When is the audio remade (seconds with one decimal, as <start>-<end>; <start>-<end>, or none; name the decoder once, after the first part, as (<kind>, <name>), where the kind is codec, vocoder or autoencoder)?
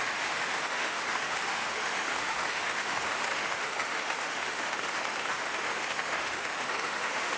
0.0-7.4 (autoencoder, DAC-VAE)